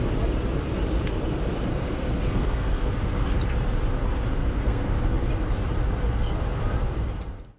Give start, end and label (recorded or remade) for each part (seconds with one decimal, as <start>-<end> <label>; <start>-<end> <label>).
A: 0.0-1.7 recorded; 1.7-2.9 remade; 2.9-4.4 recorded; 4.4-5.0 remade; 5.0-7.6 recorded